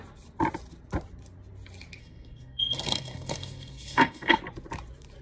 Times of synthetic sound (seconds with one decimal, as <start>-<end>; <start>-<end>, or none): 2.0-4.4